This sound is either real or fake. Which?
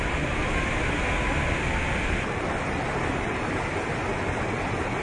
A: real